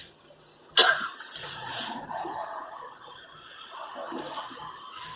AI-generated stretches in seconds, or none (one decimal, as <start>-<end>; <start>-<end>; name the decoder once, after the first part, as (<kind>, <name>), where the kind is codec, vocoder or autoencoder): 0.8-3.9 (vocoder, Vocos)